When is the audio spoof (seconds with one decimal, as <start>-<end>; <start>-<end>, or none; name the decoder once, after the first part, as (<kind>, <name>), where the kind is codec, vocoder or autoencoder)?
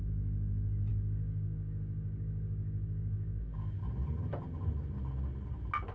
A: 0.9-3.8 (codec, DAC)